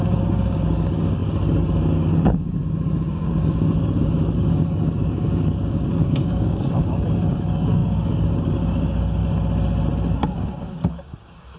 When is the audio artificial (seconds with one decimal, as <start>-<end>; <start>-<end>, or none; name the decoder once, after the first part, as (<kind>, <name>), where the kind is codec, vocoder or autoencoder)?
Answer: 0.0-9.2 (codec, DAC); 10.1-11.6